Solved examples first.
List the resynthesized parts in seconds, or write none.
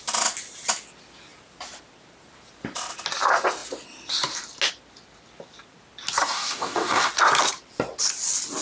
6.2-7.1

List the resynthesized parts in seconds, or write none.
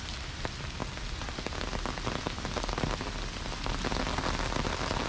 none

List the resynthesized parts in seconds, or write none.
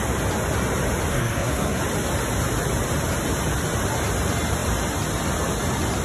1.1-1.8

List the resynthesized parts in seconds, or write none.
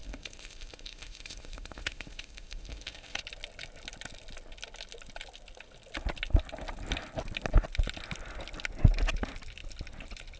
0.0-3.2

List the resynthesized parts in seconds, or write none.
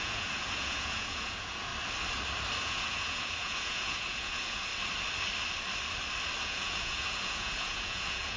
0.0-1.7; 2.6-4.7; 6.4-8.4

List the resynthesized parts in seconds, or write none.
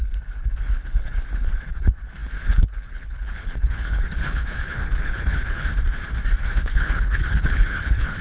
0.0-5.7; 6.4-8.2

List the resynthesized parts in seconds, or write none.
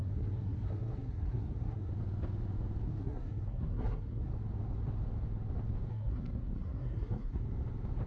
0.0-1.9; 2.8-4.3; 5.9-7.4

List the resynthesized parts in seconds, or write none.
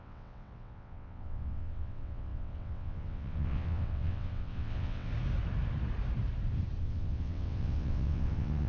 0.0-5.1; 6.8-8.7